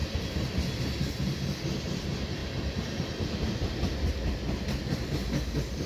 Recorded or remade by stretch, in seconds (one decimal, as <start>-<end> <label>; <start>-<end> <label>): 0.0-5.9 recorded